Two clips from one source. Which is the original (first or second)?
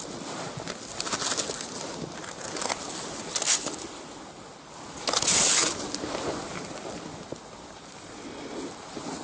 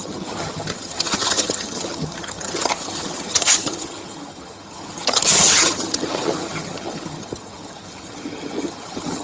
first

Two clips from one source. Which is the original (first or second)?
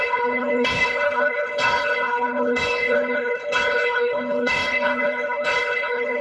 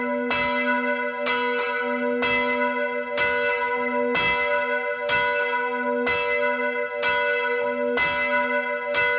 second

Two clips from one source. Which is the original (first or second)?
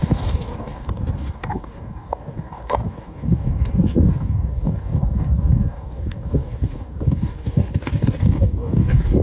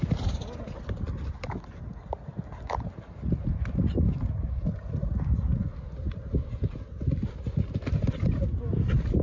second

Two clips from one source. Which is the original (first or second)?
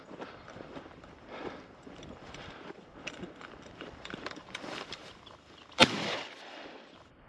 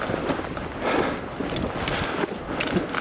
second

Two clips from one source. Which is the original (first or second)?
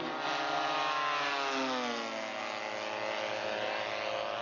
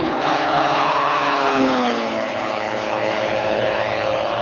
first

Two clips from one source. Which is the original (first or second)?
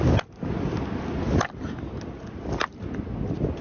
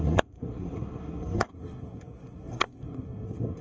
first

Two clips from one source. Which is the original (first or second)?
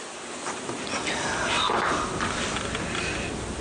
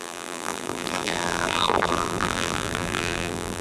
first